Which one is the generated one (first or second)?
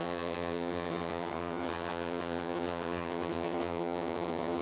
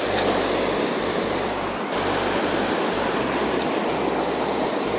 first